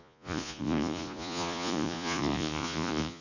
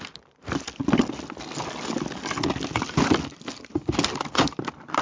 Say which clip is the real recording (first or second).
second